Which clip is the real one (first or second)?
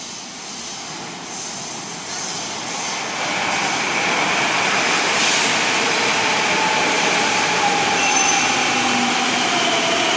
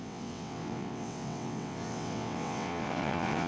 first